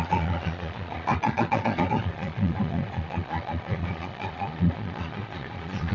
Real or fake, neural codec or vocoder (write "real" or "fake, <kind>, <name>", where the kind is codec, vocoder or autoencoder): fake, vocoder, Vocos